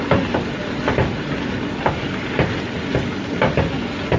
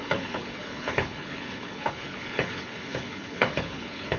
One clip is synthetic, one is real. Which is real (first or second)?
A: first